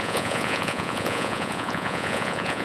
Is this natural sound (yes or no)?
no